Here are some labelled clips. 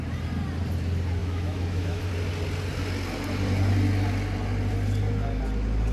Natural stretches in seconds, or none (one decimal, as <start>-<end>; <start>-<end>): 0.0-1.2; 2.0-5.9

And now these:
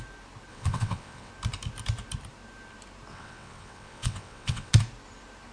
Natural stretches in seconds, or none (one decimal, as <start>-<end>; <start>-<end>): 0.0-0.5; 1.3-3.1; 4.7-5.5

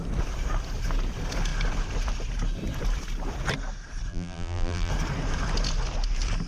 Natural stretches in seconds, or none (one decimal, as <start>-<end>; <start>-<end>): 0.0-4.1; 4.9-6.5

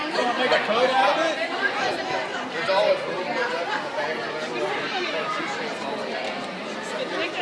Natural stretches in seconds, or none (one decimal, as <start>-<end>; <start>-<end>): 0.0-7.4